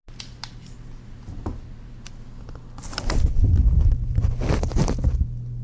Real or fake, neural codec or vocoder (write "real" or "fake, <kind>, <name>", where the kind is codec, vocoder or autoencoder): real